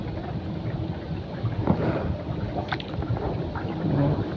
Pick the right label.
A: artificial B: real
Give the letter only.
A